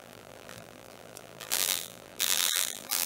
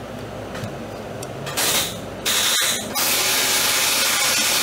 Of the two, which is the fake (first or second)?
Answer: first